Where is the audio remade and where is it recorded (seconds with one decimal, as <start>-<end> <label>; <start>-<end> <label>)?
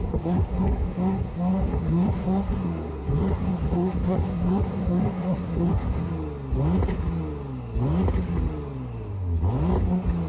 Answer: 0.0-6.1 remade; 6.1-10.3 recorded